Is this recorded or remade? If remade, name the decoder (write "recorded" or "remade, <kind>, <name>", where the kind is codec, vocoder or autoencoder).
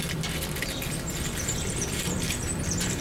remade, vocoder, BigVGAN v2